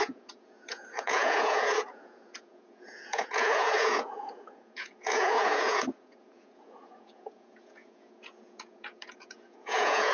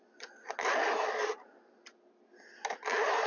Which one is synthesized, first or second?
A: first